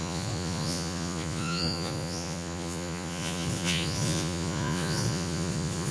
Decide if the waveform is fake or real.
fake